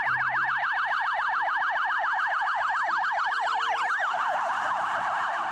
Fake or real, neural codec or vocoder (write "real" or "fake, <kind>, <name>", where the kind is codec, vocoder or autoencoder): real